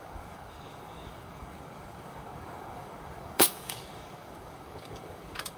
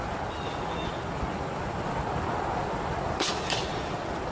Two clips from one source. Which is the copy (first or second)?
first